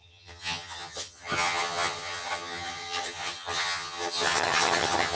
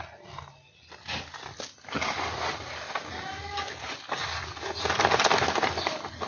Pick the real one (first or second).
second